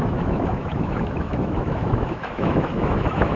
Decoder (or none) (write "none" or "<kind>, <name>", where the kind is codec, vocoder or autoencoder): autoencoder, DAC-VAE